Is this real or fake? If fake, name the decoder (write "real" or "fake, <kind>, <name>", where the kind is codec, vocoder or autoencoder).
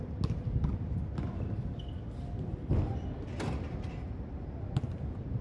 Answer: real